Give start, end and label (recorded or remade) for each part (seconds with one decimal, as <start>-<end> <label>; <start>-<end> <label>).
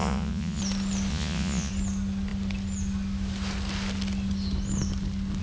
0.0-0.6 remade; 0.6-1.1 recorded; 1.1-1.7 remade; 1.7-5.4 recorded